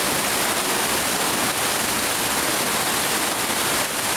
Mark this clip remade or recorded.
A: recorded